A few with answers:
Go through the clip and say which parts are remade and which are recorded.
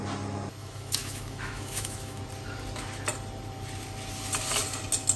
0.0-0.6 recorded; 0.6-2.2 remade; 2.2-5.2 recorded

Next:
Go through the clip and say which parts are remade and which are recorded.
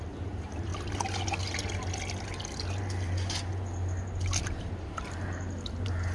0.0-0.7 remade; 0.7-4.4 recorded; 4.4-6.1 remade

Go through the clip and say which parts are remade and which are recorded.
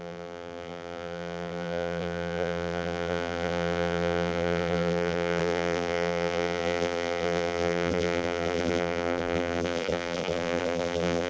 0.0-11.3 remade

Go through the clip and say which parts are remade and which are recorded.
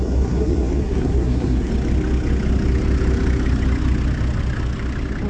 0.0-1.7 remade; 1.7-5.3 recorded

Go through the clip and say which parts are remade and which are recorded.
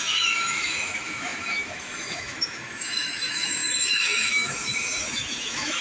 0.0-5.8 remade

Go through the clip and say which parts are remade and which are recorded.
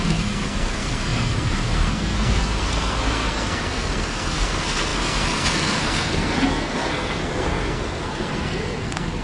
0.0-9.2 remade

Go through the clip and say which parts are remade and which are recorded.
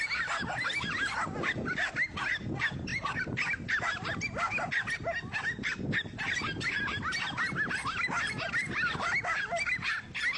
0.0-10.4 recorded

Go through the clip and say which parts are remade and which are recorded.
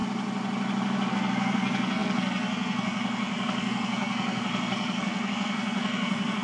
0.0-1.1 recorded; 1.1-6.4 remade